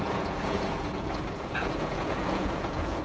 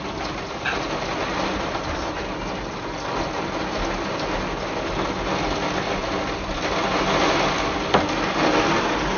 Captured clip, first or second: second